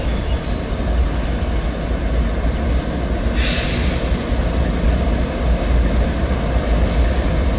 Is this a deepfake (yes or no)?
no